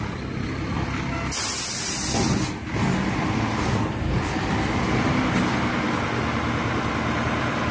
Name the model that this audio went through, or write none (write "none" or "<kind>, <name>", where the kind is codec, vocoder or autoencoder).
none